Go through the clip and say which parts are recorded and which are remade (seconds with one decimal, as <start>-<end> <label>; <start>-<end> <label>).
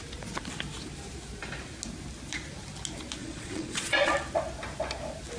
0.0-3.2 recorded; 3.2-4.1 remade; 4.1-5.4 recorded